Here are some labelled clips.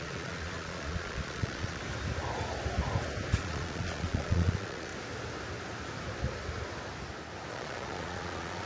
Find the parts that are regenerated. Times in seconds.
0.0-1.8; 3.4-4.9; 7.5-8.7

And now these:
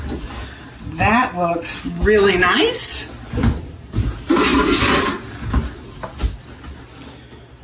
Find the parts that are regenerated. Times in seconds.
none